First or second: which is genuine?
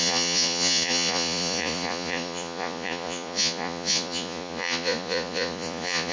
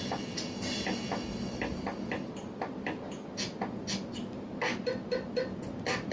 second